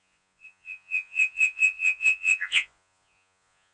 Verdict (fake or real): fake